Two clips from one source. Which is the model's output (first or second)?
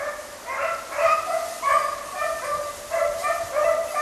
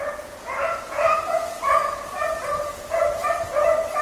second